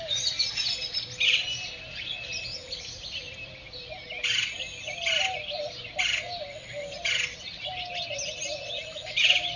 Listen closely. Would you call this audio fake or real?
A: real